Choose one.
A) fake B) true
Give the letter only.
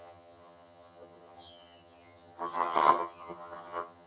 A